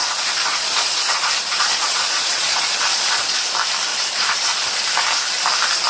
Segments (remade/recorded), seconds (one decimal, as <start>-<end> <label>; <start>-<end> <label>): 0.0-3.5 remade; 3.5-3.9 recorded; 3.9-4.8 remade; 4.8-5.9 recorded